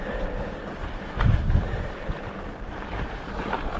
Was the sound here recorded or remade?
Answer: recorded